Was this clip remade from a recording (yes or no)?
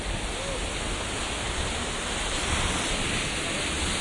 no